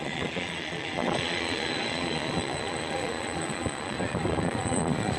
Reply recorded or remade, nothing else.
remade